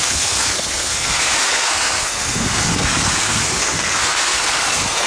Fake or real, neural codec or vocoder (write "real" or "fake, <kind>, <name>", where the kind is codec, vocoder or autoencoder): fake, codec, SNAC